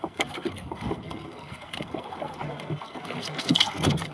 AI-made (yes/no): yes